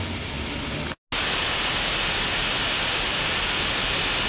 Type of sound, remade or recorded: recorded